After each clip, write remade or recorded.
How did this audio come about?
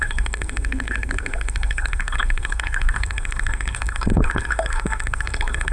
remade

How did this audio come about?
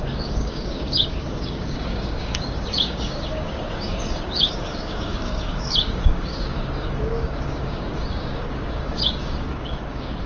remade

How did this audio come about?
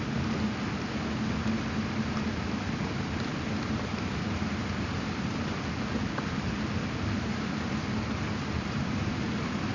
recorded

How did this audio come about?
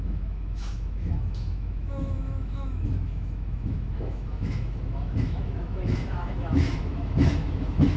remade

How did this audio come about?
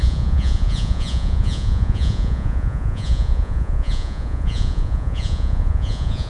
remade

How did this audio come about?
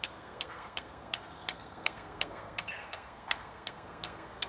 remade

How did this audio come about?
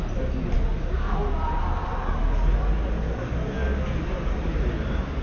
recorded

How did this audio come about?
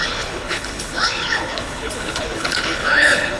remade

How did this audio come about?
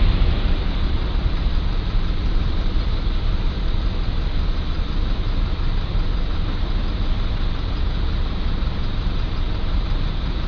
remade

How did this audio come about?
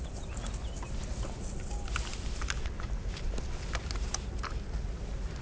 recorded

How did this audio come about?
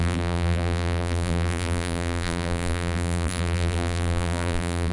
remade